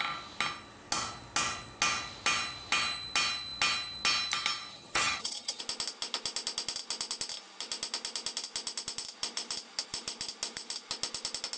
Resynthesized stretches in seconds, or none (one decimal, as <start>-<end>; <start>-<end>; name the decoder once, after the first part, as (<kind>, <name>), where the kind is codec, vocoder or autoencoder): 4.7-5.6 (vocoder, HiFi-GAN)